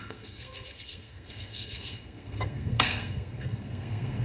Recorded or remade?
remade